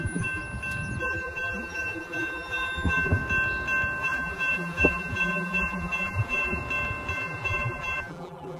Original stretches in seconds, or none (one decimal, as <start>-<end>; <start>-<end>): 0.4-1.0; 3.2-4.0; 6.6-7.1